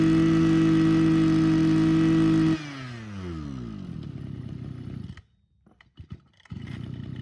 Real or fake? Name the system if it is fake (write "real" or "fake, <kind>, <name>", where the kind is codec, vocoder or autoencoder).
real